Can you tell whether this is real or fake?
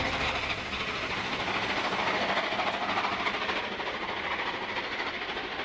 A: real